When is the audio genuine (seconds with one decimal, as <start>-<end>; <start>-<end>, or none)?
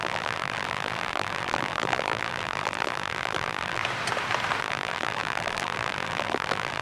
3.8-4.6